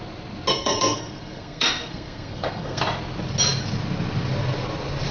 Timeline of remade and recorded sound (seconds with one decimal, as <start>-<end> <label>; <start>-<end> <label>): 0.0-0.5 recorded; 0.5-2.8 remade; 2.8-5.1 recorded